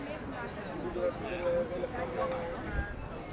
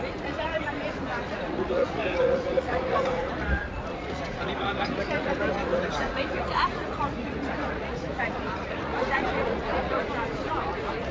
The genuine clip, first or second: first